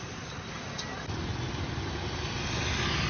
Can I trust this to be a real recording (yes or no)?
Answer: yes